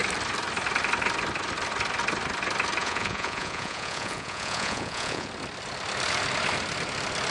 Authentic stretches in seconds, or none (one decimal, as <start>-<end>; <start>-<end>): 0.0-2.8; 5.3-7.3